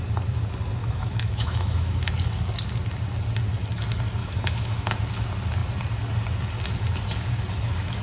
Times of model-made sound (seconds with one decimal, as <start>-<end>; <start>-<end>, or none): 0.8-2.0; 4.2-4.9